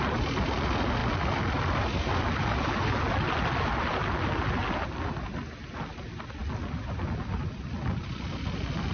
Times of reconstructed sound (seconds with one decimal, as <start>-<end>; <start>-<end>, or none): none